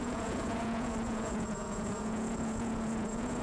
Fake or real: fake